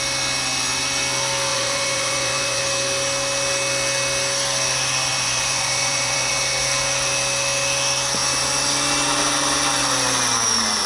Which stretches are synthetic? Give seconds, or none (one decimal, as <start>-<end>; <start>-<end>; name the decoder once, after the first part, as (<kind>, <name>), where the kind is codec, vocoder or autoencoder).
1.5-2.6 (vocoder, Vocos); 5.1-6.3